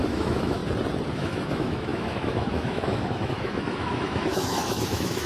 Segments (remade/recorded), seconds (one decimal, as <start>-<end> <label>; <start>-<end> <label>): 0.0-0.6 remade; 0.6-1.1 recorded; 1.1-5.3 remade